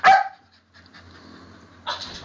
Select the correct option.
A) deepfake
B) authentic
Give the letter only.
B